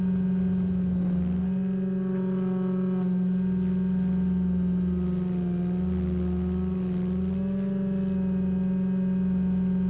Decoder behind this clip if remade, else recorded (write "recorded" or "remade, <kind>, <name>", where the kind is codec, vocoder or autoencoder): recorded